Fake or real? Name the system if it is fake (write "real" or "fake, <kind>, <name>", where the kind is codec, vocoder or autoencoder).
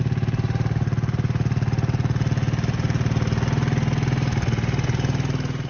real